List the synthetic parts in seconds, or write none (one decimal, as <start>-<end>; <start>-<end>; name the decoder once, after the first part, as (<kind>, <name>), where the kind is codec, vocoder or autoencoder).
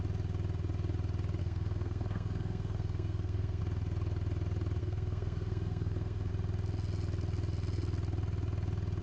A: 1.4-3.6 (codec, SNAC); 4.8-6.3